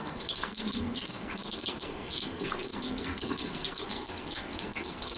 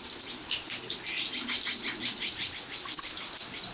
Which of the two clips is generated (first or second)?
first